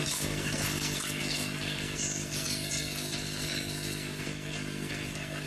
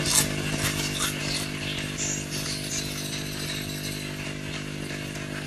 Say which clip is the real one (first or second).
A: second